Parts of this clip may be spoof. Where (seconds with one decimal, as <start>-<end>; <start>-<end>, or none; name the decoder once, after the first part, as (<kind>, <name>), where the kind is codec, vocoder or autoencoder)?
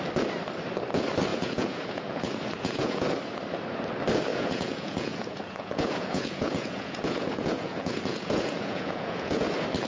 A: 1.3-3.1 (vocoder, Vocos); 4.3-9.5